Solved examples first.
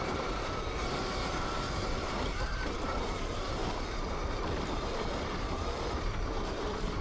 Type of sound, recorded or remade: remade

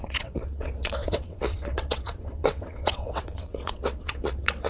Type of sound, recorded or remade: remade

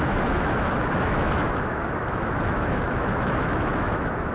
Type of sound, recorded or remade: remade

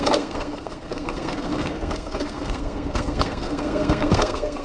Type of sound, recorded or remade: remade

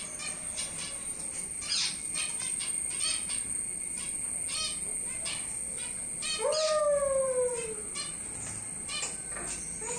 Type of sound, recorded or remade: recorded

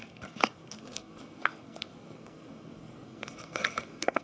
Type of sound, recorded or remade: remade